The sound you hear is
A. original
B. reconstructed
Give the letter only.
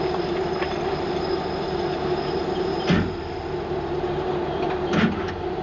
A